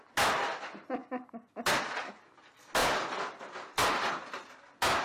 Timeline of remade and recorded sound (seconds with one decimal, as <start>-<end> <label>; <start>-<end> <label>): 0.0-5.0 recorded